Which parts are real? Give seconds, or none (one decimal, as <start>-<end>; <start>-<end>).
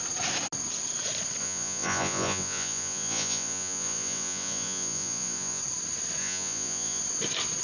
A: 0.0-1.4; 5.6-6.2; 7.0-7.6